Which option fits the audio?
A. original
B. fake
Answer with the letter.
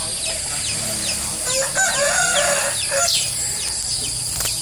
B